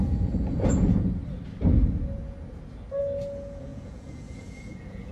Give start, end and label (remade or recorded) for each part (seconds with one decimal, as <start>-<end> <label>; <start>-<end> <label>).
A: 0.0-1.2 remade; 1.2-3.0 recorded; 3.0-5.1 remade